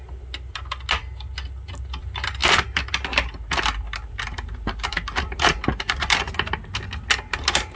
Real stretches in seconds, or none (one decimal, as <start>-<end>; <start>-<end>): 0.0-7.8